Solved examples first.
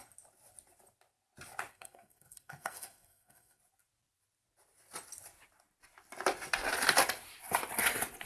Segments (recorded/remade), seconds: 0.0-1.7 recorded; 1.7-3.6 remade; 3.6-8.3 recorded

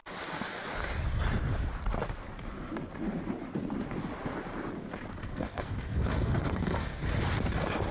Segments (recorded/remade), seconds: 0.0-5.2 recorded; 5.2-7.0 remade; 7.0-7.9 recorded

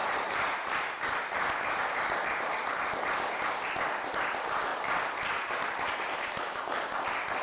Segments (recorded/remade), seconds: 0.0-7.4 recorded

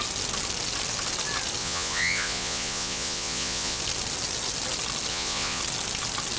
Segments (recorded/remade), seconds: 0.0-1.6 recorded; 1.6-3.8 remade; 3.8-5.1 recorded; 5.1-5.6 remade; 5.6-6.4 recorded

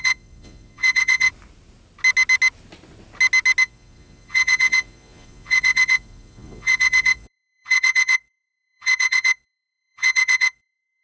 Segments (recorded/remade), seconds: 0.0-1.3 remade; 1.3-3.6 recorded; 3.6-11.0 remade

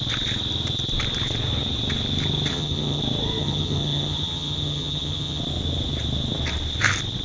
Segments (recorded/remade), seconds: 0.0-2.5 recorded; 2.5-3.0 remade; 3.0-3.4 recorded; 3.4-5.4 remade; 5.4-7.2 recorded